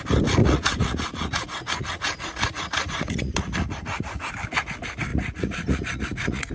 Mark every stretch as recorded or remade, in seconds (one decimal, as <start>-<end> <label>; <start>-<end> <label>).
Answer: 0.0-0.4 recorded; 0.4-4.3 remade; 4.3-5.1 recorded; 5.1-6.5 remade